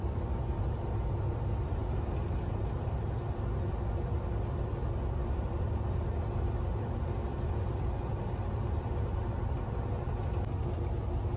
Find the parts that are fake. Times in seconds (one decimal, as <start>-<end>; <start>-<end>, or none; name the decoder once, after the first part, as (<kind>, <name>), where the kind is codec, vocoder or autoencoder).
none